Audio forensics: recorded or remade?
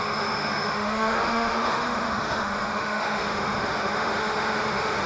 remade